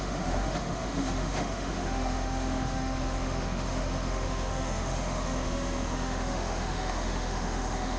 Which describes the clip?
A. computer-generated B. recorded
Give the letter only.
A